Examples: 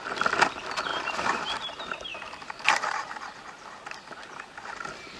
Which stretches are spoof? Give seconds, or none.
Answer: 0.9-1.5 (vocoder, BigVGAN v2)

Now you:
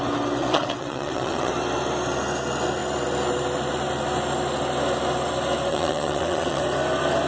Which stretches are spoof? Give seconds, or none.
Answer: 0.4-1.5 (vocoder, WaveNeXt); 5.7-6.6